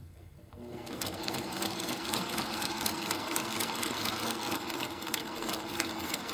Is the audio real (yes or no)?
no